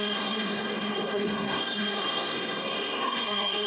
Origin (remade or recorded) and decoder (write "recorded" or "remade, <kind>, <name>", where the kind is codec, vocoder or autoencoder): remade, codec, SNAC